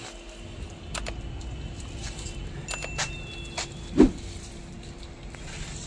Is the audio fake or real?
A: real